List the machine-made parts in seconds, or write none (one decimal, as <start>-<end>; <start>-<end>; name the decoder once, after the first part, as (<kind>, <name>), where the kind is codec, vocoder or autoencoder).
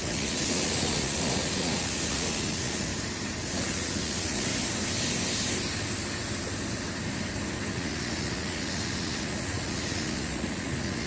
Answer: 0.0-2.9 (vocoder, Vocos); 3.5-4.5; 7.7-11.1